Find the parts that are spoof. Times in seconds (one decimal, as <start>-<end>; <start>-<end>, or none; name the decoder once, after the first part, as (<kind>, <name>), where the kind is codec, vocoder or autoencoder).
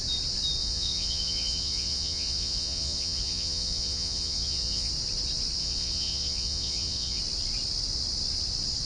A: 0.6-4.9 (vocoder, Vocos); 5.6-7.2